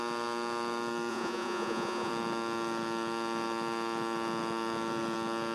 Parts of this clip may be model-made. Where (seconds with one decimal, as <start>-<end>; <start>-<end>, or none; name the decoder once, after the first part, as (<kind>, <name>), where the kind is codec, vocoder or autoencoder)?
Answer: 1.1-2.1 (vocoder, Vocos)